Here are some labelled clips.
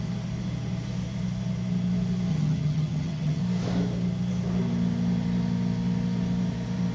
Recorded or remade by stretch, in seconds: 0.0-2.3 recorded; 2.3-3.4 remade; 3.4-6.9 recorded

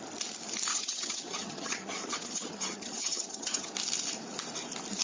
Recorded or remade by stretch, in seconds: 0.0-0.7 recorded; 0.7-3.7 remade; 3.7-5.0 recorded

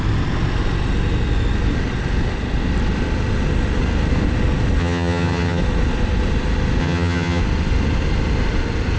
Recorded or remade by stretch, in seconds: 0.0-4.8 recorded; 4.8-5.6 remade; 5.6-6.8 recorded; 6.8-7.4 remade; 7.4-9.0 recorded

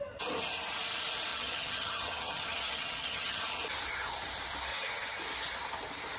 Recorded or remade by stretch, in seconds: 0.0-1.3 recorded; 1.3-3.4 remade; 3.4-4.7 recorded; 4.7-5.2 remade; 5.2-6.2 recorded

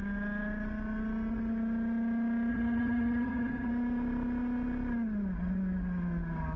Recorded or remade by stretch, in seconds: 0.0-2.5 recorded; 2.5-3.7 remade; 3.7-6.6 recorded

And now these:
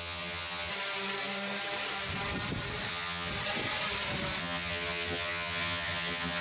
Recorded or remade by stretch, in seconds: 0.0-0.7 remade; 0.7-2.9 recorded; 2.9-3.3 remade; 3.3-4.4 recorded; 4.4-6.4 remade

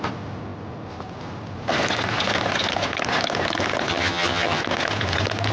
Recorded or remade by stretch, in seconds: 0.0-3.9 recorded; 3.9-4.6 remade; 4.6-5.5 recorded

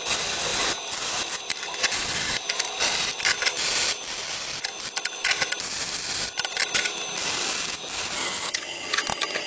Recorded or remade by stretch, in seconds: 0.0-8.2 recorded; 8.2-9.0 remade; 9.0-9.5 recorded